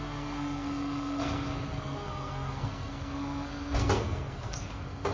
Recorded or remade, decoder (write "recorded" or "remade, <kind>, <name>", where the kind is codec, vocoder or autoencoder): remade, codec, SNAC